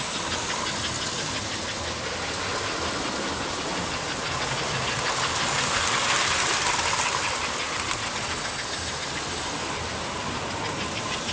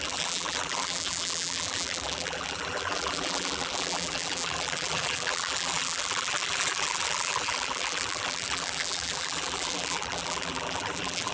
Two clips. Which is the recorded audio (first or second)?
first